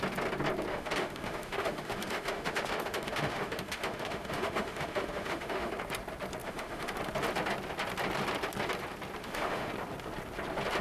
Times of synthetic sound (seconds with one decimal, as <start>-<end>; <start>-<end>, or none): 0.7-5.7; 6.4-6.9; 9.2-9.7